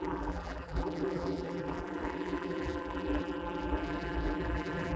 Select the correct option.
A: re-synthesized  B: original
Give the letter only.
A